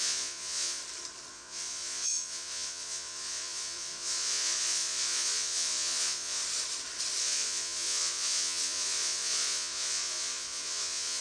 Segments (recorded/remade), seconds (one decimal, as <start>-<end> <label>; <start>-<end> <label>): 0.0-0.8 remade; 0.8-1.3 recorded; 1.3-6.4 remade; 6.4-7.2 recorded; 7.2-11.2 remade